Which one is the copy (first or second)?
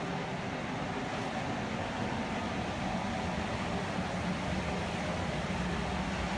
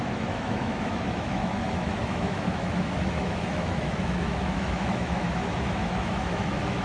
second